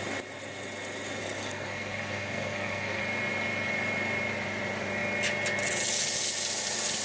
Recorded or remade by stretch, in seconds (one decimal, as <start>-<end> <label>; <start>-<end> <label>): 0.0-1.2 recorded; 1.2-3.0 remade; 3.0-7.0 recorded